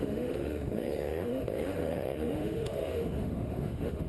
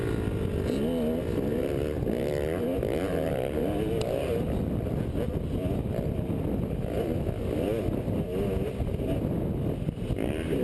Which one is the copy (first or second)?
first